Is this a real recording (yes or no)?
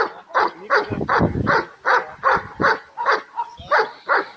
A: yes